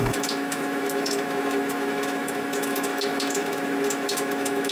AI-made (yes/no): yes